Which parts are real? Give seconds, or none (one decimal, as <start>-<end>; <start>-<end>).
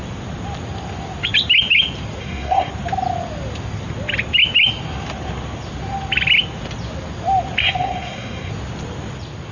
0.0-2.2; 2.7-7.6; 8.5-9.5